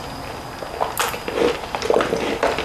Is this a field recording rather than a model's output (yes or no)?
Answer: yes